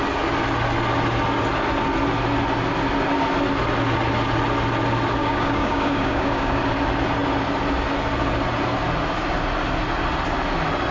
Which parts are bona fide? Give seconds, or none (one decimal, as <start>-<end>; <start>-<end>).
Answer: 0.0-5.2; 6.6-10.9